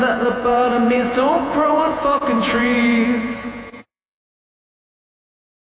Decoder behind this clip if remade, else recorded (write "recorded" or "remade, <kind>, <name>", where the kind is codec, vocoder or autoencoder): remade, vocoder, Vocos